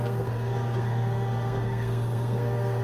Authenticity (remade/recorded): remade